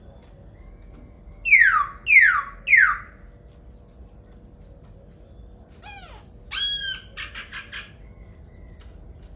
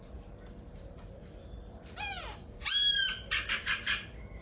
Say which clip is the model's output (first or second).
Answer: second